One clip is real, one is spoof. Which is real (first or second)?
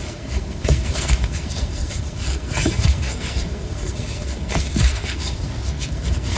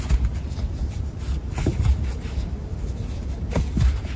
second